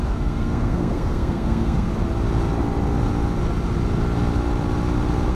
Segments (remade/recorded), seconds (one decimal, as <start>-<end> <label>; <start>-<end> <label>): 0.0-1.9 remade; 1.9-5.3 recorded